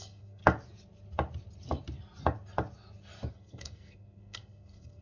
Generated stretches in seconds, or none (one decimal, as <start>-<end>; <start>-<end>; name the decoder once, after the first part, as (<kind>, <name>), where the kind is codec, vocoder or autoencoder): 0.0-0.4 (codec, SNAC); 3.3-5.0